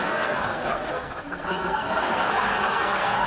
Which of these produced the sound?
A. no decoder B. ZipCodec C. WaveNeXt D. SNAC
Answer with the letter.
D